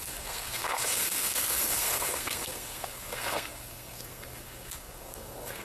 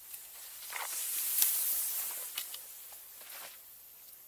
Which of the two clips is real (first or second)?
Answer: second